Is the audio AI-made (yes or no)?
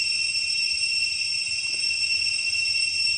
no